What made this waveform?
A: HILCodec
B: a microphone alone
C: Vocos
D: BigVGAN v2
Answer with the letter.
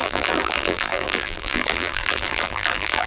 D